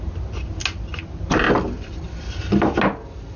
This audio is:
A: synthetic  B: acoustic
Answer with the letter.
B